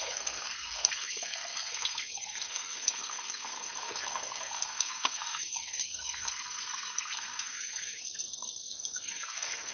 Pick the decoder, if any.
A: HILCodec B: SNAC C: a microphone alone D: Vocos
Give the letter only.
B